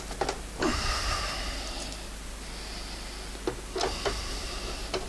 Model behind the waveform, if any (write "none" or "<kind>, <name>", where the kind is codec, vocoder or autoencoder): none